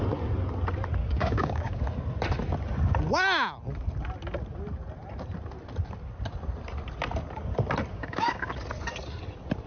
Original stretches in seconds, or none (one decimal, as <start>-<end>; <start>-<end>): 0.0-1.0; 1.8-7.9; 8.5-9.7